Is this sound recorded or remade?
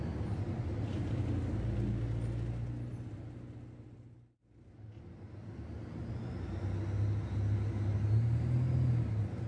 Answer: recorded